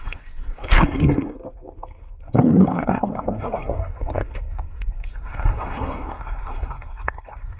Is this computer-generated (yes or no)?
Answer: yes